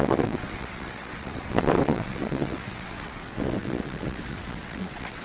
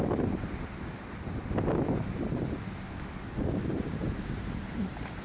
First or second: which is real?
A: second